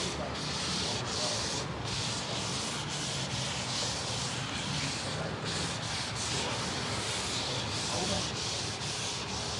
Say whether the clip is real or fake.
fake